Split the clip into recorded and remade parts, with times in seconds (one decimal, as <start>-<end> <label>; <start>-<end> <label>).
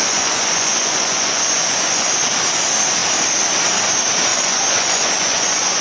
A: 0.0-2.1 remade; 2.1-4.3 recorded; 4.3-5.8 remade